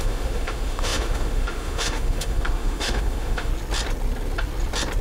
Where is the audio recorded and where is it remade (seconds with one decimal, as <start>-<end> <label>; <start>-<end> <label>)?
0.0-3.5 remade; 3.5-5.0 recorded